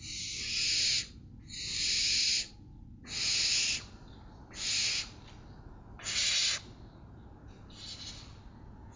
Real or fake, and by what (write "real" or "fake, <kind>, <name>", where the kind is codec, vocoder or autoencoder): real